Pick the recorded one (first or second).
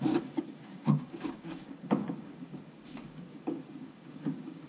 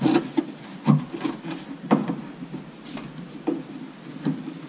second